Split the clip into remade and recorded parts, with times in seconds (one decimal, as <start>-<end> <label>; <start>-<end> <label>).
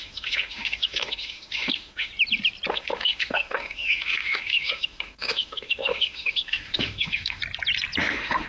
0.0-2.1 remade; 2.1-2.7 recorded; 2.7-7.4 remade; 7.4-8.0 recorded; 8.0-8.5 remade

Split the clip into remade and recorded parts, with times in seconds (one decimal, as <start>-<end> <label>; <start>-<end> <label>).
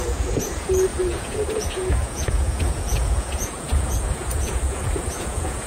0.0-5.7 remade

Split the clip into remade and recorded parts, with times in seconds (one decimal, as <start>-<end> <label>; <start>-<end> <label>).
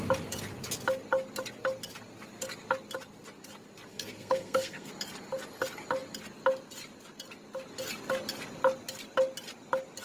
0.0-3.9 recorded; 3.9-4.9 remade; 4.9-10.0 recorded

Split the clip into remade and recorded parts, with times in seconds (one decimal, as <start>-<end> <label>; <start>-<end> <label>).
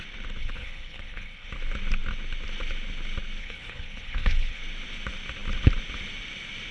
0.0-0.4 recorded; 0.4-1.5 remade; 1.5-3.4 recorded; 3.4-4.6 remade; 4.6-6.7 recorded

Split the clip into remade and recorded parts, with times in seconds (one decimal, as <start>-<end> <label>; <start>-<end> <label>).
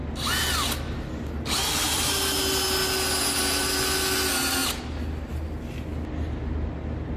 0.0-7.2 recorded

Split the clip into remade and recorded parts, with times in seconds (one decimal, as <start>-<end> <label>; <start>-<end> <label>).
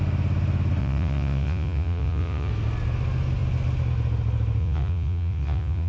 0.0-0.8 recorded; 0.8-2.5 remade; 2.5-4.6 recorded; 4.6-5.9 remade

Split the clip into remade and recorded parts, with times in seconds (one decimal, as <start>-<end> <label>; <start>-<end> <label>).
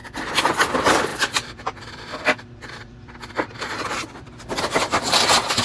0.0-0.7 recorded; 0.7-5.6 remade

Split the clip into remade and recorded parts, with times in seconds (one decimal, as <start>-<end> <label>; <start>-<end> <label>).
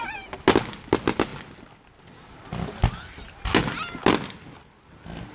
0.0-5.3 recorded